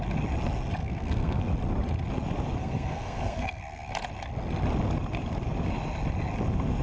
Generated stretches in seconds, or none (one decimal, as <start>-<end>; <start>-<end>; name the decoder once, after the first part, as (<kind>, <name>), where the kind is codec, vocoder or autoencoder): 0.8-1.4 (codec, SNAC); 2.6-3.6